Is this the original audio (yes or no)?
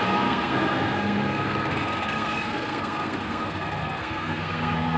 no